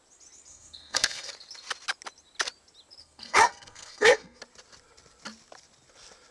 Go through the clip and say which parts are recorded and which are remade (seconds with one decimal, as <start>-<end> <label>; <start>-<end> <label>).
0.0-0.5 recorded; 0.5-1.3 remade; 1.3-3.0 recorded; 3.0-4.4 remade; 4.4-6.3 recorded